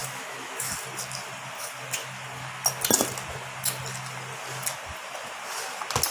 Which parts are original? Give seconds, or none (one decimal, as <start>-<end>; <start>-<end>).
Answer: 0.7-6.1